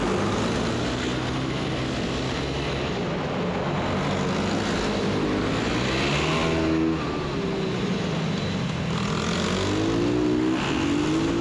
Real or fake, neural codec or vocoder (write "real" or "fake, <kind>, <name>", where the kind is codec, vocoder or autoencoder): real